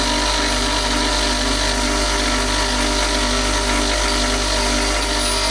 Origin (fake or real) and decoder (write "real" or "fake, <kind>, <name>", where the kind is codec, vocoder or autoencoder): real